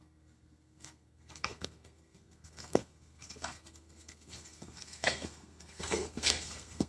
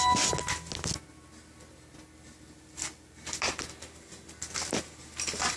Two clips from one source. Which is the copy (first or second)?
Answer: first